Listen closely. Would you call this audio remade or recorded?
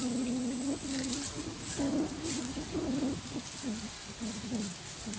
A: recorded